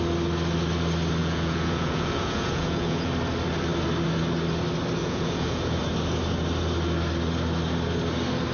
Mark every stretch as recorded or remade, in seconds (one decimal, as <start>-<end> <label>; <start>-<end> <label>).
0.0-1.2 recorded; 1.2-3.1 remade; 3.1-5.0 recorded; 5.0-5.8 remade; 5.8-8.5 recorded